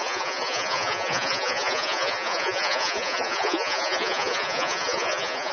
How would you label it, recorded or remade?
remade